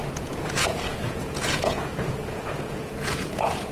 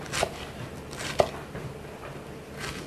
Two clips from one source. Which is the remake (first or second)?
first